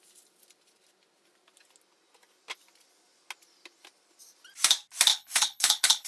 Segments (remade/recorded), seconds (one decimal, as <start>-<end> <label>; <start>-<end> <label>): 0.0-5.1 recorded; 5.1-6.1 remade